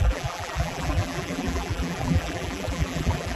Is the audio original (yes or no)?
no